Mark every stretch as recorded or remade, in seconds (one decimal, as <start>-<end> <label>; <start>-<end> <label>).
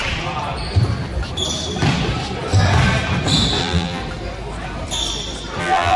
0.0-3.6 recorded; 3.6-4.0 remade; 4.0-5.6 recorded; 5.6-6.0 remade